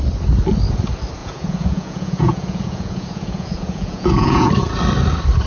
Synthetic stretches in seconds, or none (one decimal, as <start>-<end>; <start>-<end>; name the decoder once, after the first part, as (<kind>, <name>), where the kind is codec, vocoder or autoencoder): 1.2-4.5 (vocoder, Vocos)